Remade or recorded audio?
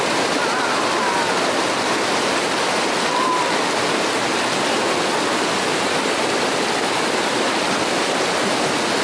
recorded